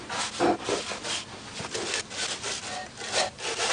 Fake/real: real